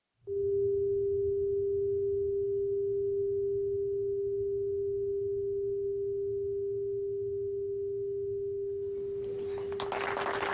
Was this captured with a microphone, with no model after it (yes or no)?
yes